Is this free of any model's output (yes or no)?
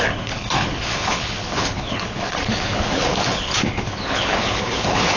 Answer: no